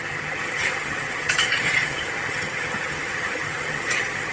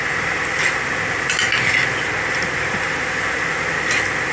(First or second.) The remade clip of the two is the first